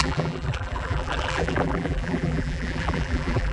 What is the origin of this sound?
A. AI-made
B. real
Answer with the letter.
A